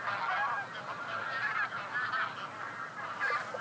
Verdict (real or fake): real